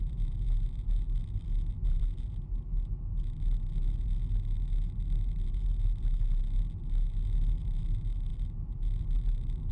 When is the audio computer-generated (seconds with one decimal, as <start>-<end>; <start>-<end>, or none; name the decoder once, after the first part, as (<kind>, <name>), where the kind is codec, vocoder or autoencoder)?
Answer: none